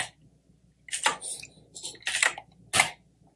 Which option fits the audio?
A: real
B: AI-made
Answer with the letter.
A